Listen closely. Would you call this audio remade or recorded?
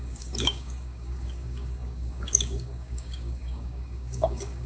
remade